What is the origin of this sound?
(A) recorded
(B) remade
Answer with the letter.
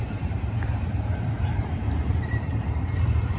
B